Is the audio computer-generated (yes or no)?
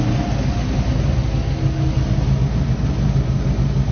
no